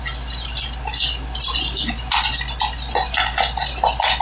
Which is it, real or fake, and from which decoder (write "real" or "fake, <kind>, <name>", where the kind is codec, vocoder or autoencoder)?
real